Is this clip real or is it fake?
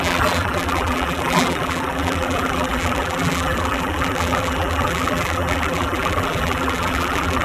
fake